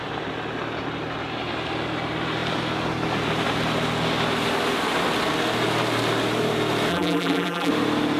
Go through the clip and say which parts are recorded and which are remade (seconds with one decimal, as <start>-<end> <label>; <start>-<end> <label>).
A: 0.0-6.9 recorded; 6.9-7.7 remade; 7.7-8.2 recorded